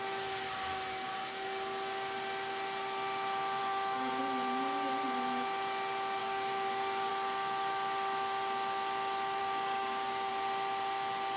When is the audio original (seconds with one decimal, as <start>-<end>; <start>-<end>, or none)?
0.0-3.6; 4.2-6.2; 7.1-9.4; 10.3-11.4